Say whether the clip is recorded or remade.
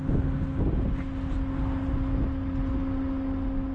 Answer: recorded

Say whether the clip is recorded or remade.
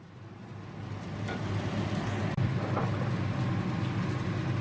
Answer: recorded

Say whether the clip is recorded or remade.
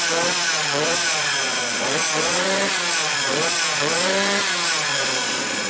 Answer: remade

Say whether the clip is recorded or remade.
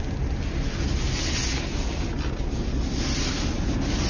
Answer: recorded